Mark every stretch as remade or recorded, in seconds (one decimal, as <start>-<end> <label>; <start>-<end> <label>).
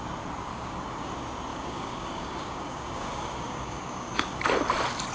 0.0-0.5 recorded; 0.5-1.1 remade; 1.1-1.5 recorded; 1.5-4.4 remade; 4.4-5.1 recorded